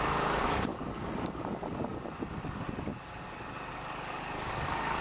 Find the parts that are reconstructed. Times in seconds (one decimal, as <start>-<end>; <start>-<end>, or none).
0.0-0.7; 3.7-5.0